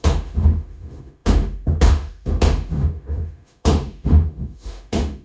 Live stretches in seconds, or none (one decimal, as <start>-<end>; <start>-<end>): none